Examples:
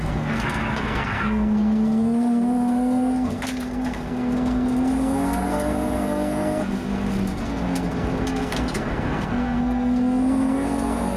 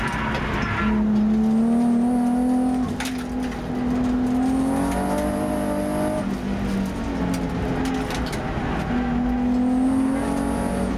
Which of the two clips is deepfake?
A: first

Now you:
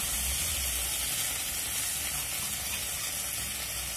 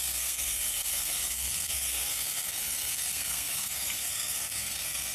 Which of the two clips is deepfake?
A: second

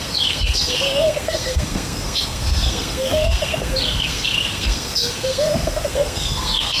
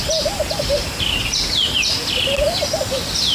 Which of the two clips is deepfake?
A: first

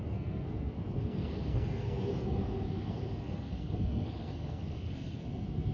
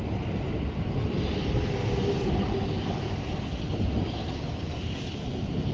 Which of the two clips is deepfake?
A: first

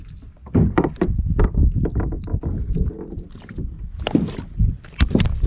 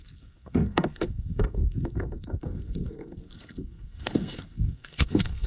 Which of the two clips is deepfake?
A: second